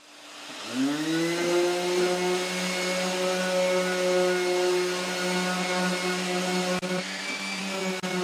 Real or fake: real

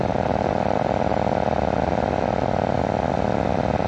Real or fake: real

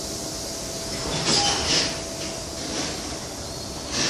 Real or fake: real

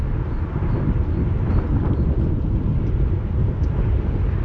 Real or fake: fake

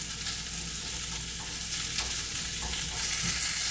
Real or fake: real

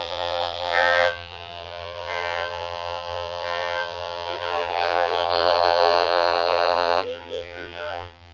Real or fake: fake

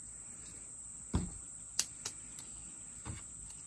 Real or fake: real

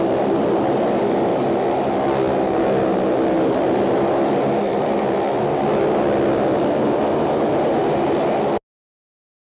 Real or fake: real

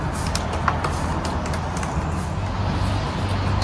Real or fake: real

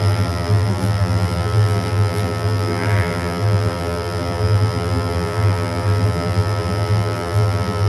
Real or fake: fake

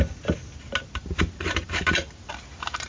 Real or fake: real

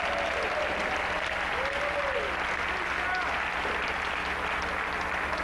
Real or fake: real